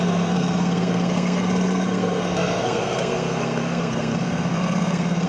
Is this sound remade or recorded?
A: remade